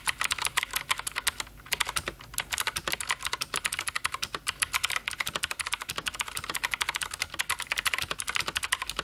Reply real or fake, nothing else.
real